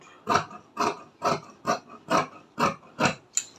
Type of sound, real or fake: real